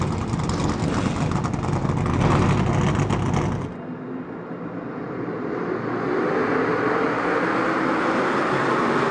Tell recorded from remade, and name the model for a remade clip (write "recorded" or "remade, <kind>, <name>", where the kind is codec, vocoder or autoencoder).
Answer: recorded